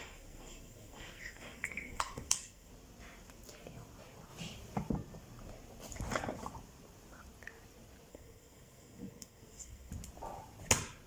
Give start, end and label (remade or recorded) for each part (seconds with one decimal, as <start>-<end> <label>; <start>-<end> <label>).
0.0-2.7 remade; 2.7-8.1 recorded; 8.1-9.9 remade; 9.9-11.1 recorded